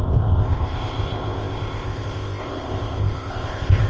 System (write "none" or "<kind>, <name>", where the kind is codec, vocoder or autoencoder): codec, ZipCodec